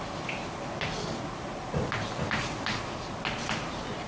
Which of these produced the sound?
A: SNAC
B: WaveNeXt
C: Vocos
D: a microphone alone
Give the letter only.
D